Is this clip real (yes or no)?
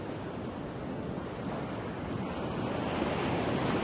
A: yes